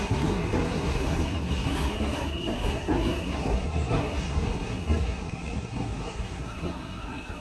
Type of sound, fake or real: fake